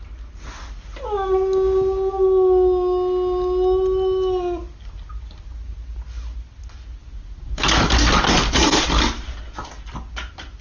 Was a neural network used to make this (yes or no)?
no